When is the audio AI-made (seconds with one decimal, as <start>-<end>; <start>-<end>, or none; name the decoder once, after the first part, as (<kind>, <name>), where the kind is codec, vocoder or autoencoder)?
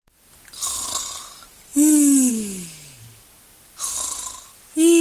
none